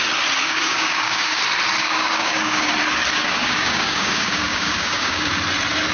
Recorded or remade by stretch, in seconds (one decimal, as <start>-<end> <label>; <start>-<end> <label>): 0.0-0.4 recorded; 0.4-1.4 remade; 1.4-1.8 recorded; 1.8-2.7 remade; 2.7-3.1 recorded; 3.1-5.3 remade; 5.3-5.9 recorded